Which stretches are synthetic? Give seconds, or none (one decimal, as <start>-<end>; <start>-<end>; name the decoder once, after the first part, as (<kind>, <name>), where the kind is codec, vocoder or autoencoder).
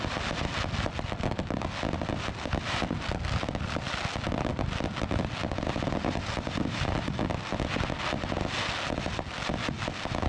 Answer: none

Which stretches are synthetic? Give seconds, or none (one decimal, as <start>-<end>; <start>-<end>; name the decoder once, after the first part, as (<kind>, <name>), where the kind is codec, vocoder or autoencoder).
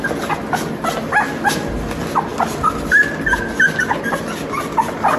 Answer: none